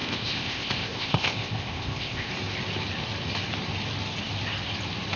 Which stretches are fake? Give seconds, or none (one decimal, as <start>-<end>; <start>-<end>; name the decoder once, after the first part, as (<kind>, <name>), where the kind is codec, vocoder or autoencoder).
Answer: 0.0-2.3 (codec, ZipCodec)